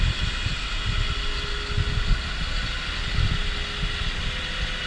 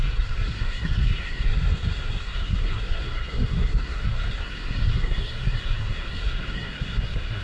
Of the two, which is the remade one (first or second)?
second